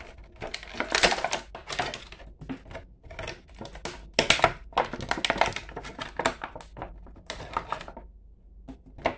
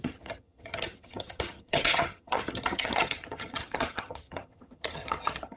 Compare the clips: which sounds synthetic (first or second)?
second